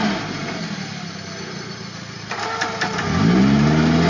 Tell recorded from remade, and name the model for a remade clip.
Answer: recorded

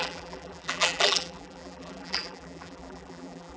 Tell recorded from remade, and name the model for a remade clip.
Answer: remade, vocoder, BigVGAN v2